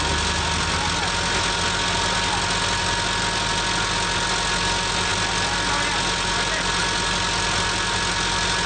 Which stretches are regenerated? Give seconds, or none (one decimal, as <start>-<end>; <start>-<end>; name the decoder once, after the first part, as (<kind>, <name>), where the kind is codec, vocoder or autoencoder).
none